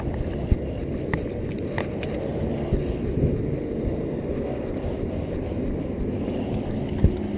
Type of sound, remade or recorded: recorded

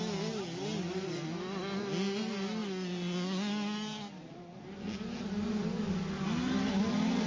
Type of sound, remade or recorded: recorded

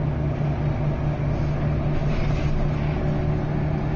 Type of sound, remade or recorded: recorded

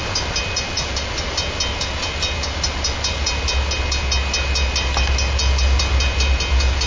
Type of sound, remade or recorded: recorded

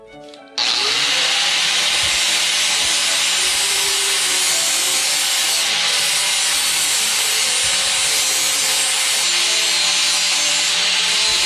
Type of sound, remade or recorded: recorded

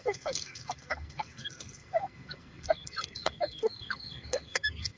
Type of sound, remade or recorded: remade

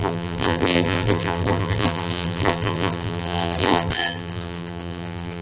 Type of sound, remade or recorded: remade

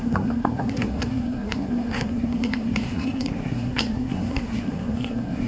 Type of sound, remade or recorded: remade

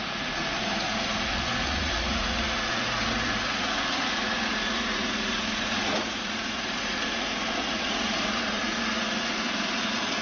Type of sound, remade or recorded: remade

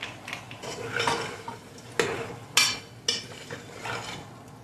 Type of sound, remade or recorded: recorded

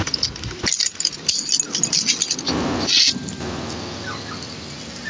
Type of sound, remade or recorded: recorded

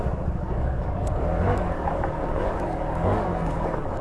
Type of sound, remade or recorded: remade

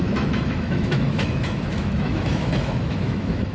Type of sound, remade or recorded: remade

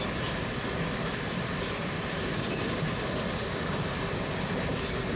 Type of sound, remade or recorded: recorded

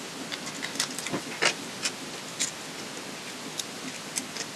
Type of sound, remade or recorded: recorded